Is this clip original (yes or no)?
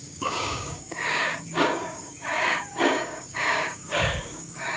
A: no